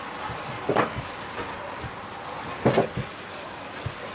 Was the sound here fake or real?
real